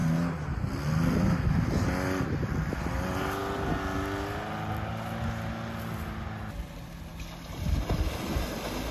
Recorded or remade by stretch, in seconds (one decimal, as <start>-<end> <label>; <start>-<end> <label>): 0.0-8.9 recorded